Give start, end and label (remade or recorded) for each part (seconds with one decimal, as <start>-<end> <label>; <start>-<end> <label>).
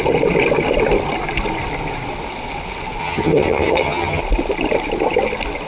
0.0-3.0 recorded; 3.0-4.2 remade; 4.2-5.7 recorded